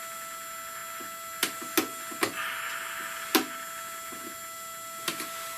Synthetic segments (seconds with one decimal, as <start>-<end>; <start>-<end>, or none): none